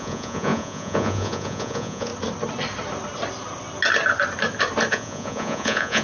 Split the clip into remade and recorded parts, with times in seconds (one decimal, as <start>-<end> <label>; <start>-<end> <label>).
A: 0.0-2.1 remade; 2.1-4.9 recorded; 4.9-6.0 remade